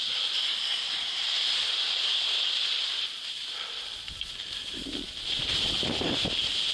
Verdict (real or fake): real